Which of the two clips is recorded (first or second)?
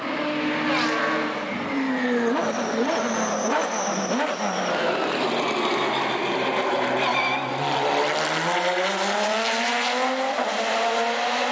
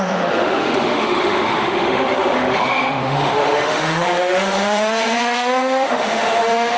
first